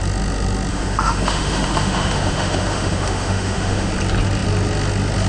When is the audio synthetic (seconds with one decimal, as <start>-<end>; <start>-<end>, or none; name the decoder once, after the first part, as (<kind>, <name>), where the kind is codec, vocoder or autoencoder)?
0.7-3.9 (autoencoder, DAC-VAE)